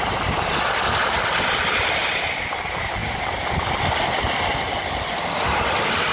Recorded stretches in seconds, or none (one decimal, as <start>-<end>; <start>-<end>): 0.0-6.1